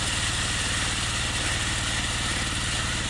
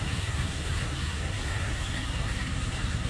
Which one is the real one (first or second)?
first